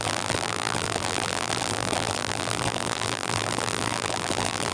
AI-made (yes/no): yes